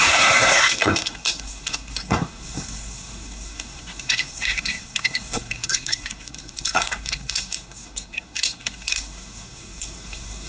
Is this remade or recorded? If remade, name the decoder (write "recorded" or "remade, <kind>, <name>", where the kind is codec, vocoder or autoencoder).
remade, codec, SNAC